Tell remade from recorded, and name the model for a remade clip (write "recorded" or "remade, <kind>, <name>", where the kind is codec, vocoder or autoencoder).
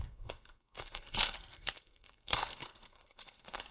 remade, codec, SNAC